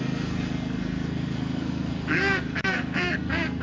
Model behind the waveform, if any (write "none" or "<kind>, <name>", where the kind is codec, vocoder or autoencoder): codec, SNAC